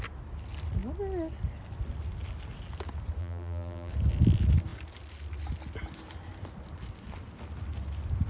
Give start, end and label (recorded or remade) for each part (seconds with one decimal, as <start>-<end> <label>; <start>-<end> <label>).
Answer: 0.0-3.2 recorded; 3.2-3.9 remade; 3.9-8.3 recorded